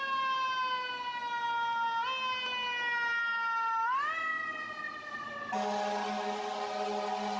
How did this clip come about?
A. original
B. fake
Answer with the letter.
A